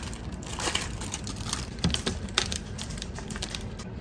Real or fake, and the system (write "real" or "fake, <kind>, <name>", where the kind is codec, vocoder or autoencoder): fake, vocoder, BigVGAN v2